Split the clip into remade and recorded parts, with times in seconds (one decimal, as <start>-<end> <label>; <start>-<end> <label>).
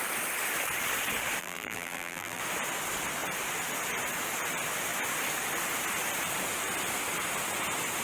0.0-1.4 recorded; 1.4-2.4 remade; 2.4-8.0 recorded